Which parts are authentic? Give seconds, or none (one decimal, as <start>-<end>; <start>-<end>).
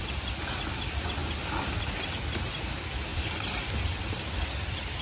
0.0-3.1